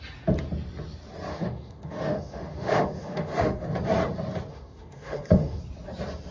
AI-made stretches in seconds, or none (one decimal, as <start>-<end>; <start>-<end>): 1.3-3.7; 4.5-5.6